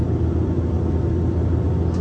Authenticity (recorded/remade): recorded